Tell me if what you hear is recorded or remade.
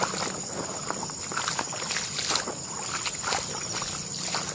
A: recorded